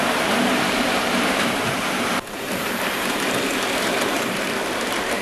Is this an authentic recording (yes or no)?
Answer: no